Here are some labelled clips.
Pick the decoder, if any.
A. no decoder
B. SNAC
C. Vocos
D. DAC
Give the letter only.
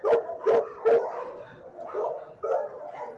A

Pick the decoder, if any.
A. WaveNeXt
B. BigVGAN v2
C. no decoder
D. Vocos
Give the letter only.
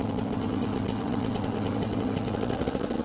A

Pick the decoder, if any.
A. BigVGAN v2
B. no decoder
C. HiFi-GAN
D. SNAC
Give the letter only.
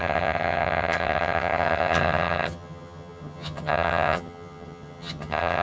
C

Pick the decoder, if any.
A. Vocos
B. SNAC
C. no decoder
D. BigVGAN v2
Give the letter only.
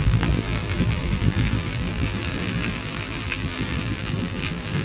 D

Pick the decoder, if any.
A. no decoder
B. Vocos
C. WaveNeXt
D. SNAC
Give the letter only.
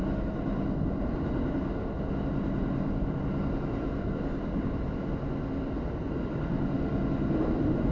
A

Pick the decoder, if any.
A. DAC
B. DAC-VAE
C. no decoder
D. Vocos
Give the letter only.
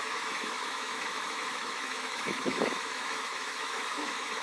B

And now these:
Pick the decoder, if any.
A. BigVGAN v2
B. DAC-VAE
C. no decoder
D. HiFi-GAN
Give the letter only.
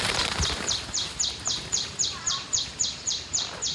A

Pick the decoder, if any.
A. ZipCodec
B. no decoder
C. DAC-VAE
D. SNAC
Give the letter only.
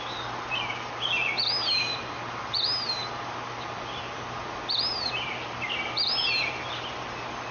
B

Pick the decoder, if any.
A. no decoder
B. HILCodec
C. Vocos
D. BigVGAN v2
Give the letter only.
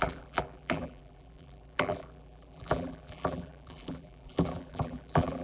D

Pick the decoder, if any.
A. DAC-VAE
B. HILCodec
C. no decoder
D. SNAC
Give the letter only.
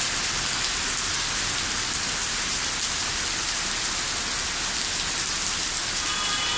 C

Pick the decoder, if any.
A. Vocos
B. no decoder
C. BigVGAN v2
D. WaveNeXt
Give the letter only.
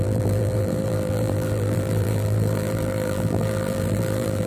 C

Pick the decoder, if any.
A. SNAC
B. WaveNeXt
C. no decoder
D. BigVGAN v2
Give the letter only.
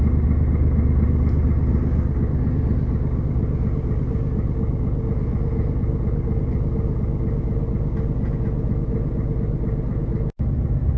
C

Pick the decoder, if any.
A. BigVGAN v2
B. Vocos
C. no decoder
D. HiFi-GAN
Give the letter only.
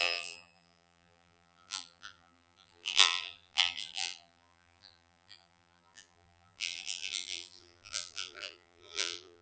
A